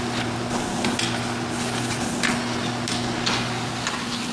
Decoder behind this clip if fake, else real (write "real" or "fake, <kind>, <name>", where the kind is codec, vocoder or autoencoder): real